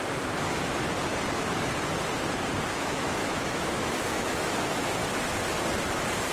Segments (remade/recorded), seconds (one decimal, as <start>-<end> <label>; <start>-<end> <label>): 0.0-2.7 recorded; 2.7-5.0 remade; 5.0-6.3 recorded